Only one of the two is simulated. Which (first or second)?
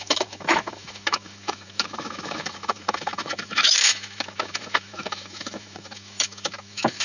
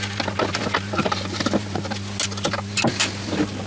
first